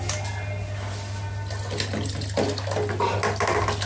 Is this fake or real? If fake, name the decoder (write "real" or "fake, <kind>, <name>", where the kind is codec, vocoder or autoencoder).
real